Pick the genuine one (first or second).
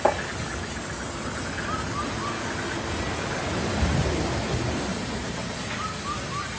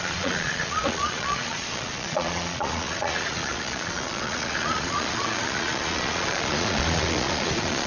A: first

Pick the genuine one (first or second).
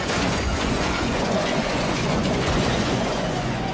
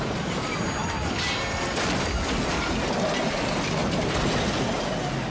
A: second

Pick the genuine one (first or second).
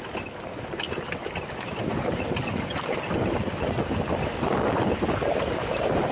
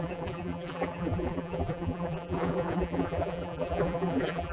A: first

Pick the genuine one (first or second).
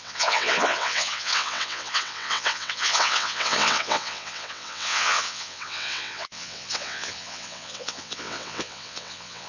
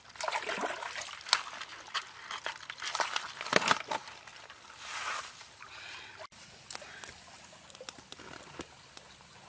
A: second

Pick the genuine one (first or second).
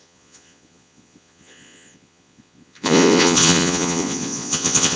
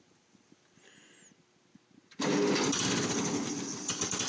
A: second